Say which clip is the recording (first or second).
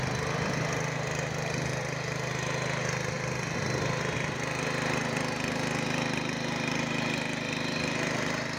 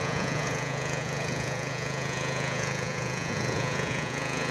first